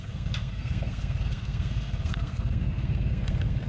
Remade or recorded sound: remade